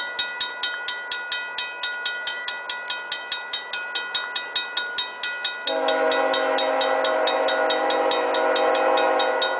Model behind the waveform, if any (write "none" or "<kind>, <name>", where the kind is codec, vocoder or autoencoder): none